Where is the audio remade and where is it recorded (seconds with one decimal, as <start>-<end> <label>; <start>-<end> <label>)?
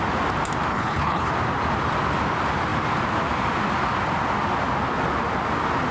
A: 0.0-0.7 recorded; 0.7-1.3 remade; 1.3-5.9 recorded